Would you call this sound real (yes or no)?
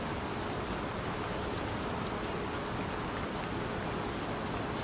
yes